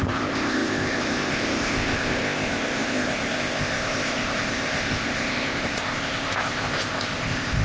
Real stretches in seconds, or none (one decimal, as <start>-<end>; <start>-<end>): none